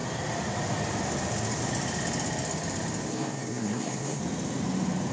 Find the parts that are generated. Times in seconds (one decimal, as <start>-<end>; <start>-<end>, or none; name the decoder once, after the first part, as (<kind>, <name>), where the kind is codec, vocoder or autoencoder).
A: 3.1-4.2 (codec, SNAC)